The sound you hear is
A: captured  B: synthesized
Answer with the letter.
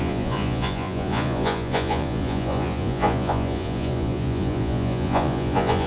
B